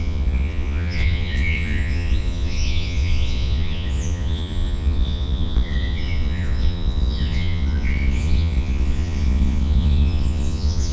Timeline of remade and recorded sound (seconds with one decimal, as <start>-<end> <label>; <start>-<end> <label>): 0.0-10.9 remade